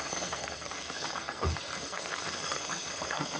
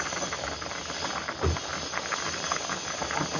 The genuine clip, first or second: second